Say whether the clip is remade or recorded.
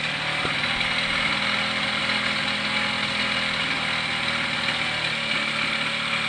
recorded